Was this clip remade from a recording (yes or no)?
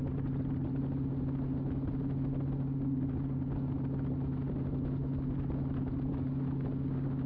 no